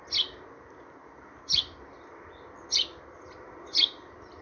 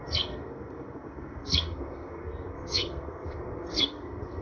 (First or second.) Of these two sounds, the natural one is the first